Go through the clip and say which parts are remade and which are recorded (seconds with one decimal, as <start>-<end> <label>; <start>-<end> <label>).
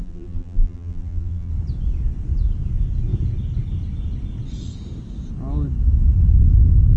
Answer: 0.0-1.5 remade; 1.5-7.0 recorded